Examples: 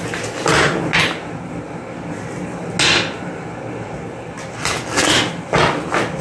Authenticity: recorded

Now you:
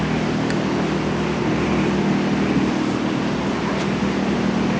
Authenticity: recorded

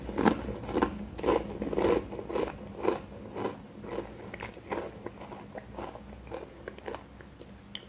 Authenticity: recorded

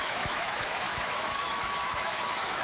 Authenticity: remade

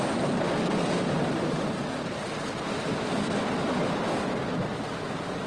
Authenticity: recorded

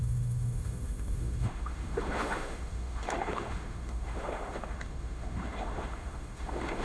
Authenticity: remade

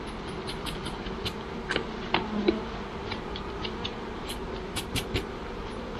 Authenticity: recorded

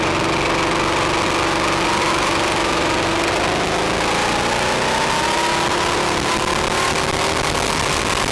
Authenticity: recorded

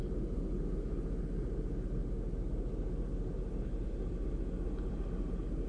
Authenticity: recorded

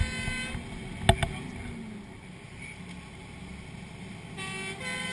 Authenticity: recorded